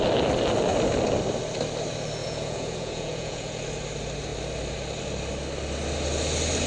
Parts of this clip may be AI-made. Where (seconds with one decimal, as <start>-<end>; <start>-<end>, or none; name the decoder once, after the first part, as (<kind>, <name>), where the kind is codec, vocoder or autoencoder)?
2.2-3.6 (vocoder, Vocos)